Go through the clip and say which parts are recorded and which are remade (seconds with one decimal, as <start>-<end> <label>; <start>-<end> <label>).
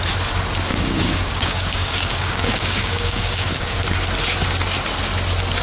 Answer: 0.0-0.7 recorded; 0.7-3.7 remade; 3.7-5.6 recorded